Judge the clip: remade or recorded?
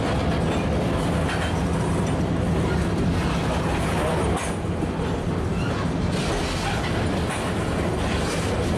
recorded